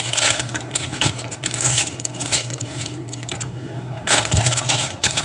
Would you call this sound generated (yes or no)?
yes